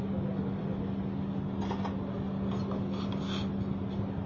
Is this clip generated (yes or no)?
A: no